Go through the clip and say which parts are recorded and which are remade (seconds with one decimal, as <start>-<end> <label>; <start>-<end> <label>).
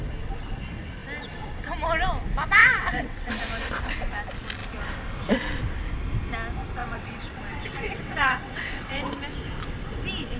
0.0-2.6 recorded; 2.6-3.3 remade; 3.3-6.8 recorded; 6.8-9.1 remade; 9.1-10.4 recorded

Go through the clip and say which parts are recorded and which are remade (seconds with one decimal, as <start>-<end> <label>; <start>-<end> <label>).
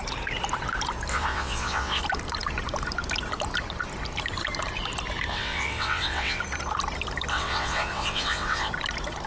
0.0-1.1 recorded; 1.1-2.0 remade; 2.0-5.3 recorded; 5.3-6.4 remade; 6.4-7.3 recorded; 7.3-8.7 remade; 8.7-9.3 recorded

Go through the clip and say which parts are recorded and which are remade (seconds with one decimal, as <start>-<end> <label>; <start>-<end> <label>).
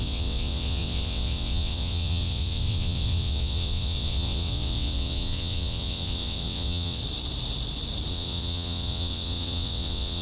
0.0-7.0 remade; 7.0-8.1 recorded; 8.1-10.2 remade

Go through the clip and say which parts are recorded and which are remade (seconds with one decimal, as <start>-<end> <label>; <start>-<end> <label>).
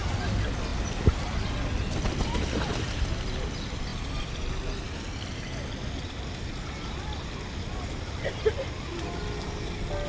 0.0-10.1 recorded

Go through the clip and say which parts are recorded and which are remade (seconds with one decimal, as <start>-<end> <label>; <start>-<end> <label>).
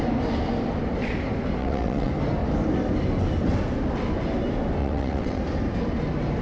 0.0-1.6 recorded; 1.6-2.1 remade; 2.1-4.8 recorded; 4.8-5.4 remade; 5.4-6.4 recorded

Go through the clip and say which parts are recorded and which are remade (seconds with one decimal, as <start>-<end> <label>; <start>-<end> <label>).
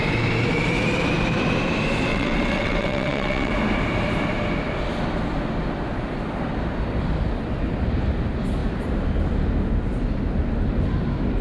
0.0-2.1 recorded; 2.1-3.5 remade; 3.5-11.4 recorded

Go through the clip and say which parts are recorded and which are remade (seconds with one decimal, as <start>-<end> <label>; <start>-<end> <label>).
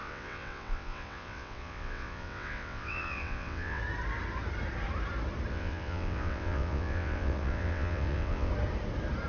0.0-3.8 remade; 3.8-5.5 recorded; 5.5-8.5 remade; 8.5-9.3 recorded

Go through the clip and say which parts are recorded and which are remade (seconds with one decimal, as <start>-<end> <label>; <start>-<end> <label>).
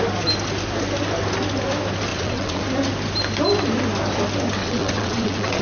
0.0-2.1 recorded; 2.1-2.6 remade; 2.6-4.6 recorded; 4.6-5.6 remade